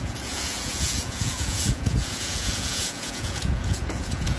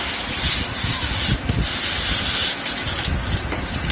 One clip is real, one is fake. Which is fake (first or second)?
first